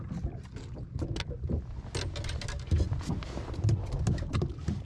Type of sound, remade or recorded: recorded